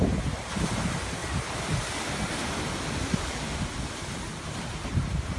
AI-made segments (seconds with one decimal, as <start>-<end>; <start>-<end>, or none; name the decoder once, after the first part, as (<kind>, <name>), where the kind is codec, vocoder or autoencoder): 0.0-1.2 (vocoder, BigVGAN v2); 4.4-5.4